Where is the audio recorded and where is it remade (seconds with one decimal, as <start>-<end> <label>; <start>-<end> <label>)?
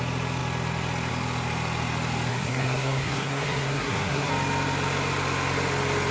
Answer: 0.0-2.3 recorded; 2.3-4.3 remade; 4.3-6.1 recorded